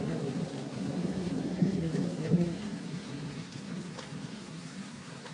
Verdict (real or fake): fake